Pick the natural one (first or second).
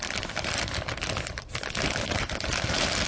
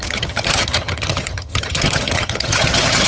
first